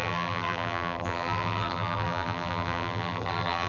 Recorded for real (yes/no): no